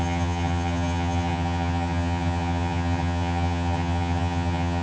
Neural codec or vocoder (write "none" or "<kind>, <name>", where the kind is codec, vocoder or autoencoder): vocoder, HiFi-GAN